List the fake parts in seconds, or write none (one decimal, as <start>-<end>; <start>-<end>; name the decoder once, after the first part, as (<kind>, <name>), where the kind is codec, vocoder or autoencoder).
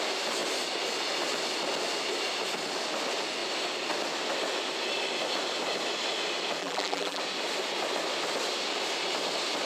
6.6-7.2 (vocoder, BigVGAN v2)